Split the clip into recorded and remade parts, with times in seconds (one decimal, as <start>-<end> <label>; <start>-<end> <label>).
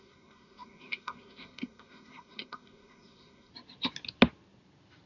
0.0-3.5 remade; 3.5-5.1 recorded